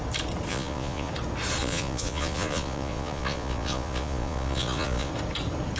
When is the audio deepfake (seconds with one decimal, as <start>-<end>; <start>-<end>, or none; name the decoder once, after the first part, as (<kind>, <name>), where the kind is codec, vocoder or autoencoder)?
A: 0.5-1.1 (vocoder, Vocos); 1.6-5.1